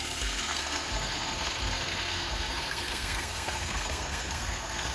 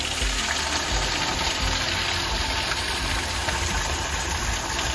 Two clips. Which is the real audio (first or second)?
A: second